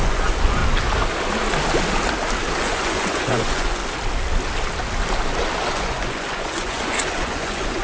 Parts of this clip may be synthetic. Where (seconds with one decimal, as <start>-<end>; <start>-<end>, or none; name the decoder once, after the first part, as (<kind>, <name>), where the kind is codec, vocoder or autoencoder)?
0.0-0.6 (vocoder, Vocos); 2.6-3.8; 5.7-7.8